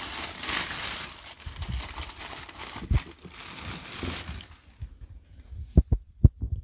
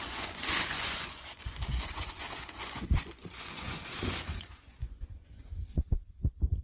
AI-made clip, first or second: second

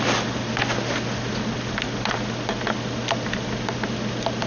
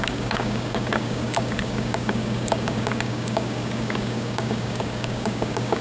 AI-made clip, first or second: second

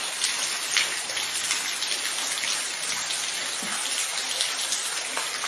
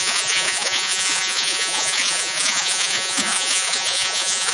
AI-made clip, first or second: second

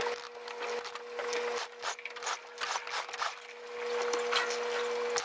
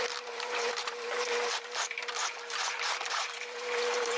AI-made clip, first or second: second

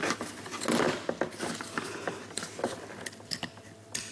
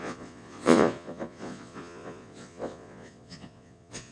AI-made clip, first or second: second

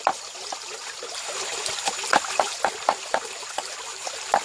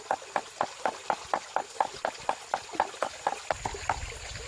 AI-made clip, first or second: first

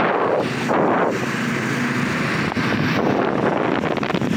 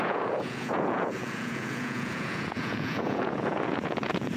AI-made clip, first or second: second